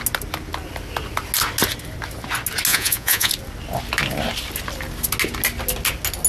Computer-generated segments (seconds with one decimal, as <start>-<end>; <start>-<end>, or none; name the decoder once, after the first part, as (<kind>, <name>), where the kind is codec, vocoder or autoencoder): 2.7-3.3 (vocoder, Vocos)